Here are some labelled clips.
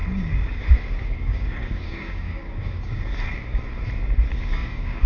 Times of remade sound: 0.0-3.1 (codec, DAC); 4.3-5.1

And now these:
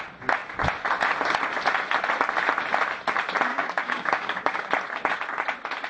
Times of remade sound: 3.5-4.7 (codec, DAC)

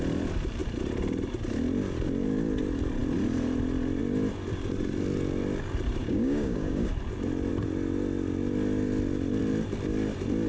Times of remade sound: 6.0-6.9 (codec, DAC)

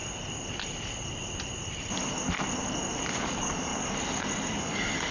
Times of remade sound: 3.1-3.7 (codec, DAC); 4.6-5.1

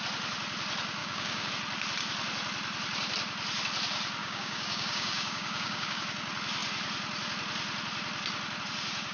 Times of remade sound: 1.0-1.5 (codec, DAC); 4.2-6.0

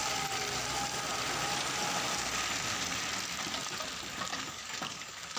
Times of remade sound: 4.3-5.4 (codec, DAC)

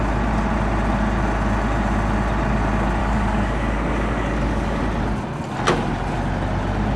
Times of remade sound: 3.0-4.8 (codec, DAC)

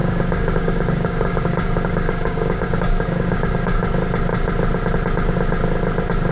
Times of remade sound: 0.0-3.8 (codec, DAC)